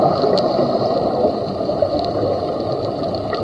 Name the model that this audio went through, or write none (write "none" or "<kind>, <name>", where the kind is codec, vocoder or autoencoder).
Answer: none